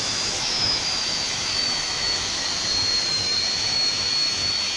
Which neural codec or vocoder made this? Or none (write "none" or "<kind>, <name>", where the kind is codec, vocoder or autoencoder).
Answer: autoencoder, DAC-VAE